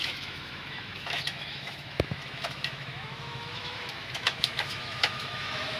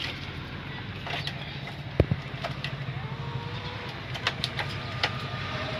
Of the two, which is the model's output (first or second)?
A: first